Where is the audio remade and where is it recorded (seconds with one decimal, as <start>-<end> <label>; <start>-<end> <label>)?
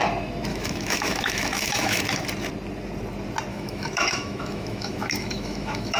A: 0.0-0.5 recorded; 0.5-2.0 remade; 2.0-3.5 recorded; 3.5-6.0 remade